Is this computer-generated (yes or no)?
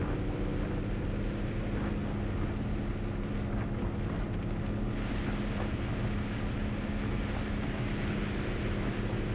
no